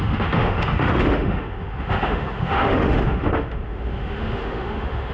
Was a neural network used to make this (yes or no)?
yes